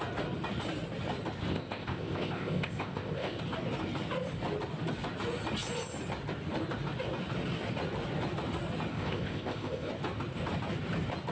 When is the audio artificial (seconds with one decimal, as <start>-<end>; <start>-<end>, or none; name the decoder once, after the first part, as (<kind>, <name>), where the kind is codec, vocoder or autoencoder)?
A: 1.5-3.4 (codec, ZipCodec); 8.9-9.9